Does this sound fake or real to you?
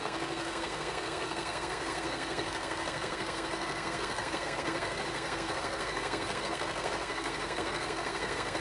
fake